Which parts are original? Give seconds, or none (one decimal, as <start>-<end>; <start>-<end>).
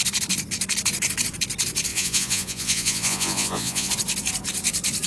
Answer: 0.0-1.9; 3.9-5.1